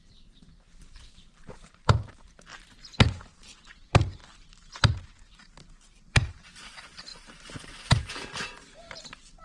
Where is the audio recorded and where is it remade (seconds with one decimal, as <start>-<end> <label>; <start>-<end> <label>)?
0.0-2.5 remade; 2.5-3.1 recorded; 3.1-4.2 remade; 4.2-5.9 recorded; 5.9-9.4 remade